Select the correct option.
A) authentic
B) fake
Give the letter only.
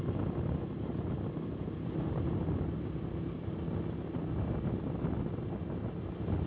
A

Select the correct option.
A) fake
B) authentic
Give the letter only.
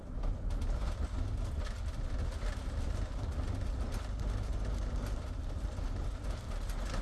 B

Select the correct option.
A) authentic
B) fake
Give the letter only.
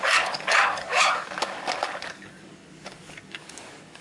B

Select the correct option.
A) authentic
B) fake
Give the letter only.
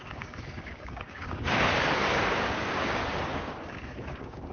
B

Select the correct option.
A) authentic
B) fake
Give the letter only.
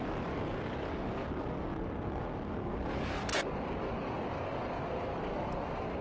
A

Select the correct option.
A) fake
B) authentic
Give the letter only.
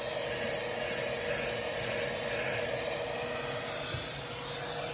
B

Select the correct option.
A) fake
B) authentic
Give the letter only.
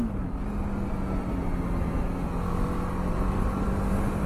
B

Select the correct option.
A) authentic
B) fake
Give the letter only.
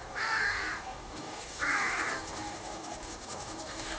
B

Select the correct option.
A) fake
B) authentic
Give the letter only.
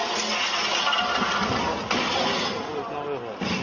B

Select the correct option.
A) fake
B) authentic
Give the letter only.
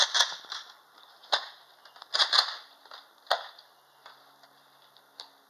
B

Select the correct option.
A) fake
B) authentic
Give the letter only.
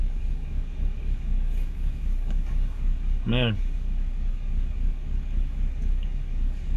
A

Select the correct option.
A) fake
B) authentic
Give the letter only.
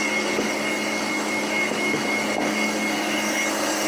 A